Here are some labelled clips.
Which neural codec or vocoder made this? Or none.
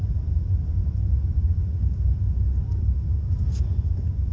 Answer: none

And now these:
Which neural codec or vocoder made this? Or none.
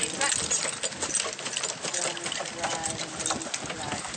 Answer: none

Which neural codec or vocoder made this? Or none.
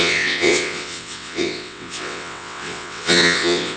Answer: vocoder, WaveNeXt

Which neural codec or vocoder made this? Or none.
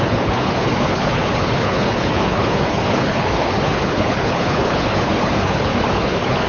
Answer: codec, HILCodec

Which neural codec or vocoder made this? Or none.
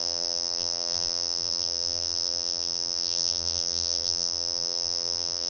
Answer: vocoder, BigVGAN v2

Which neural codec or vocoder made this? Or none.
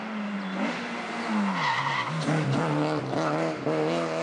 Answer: none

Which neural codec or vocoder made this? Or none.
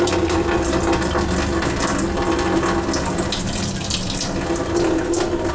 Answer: none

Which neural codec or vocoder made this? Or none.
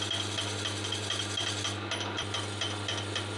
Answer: none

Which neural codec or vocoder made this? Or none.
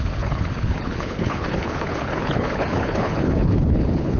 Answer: codec, HILCodec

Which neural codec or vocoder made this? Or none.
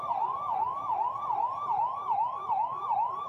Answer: none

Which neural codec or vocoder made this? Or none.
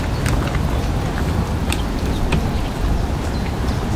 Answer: none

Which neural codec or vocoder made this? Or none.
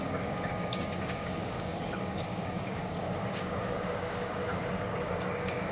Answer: codec, DAC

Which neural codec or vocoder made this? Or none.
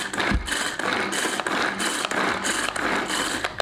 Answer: none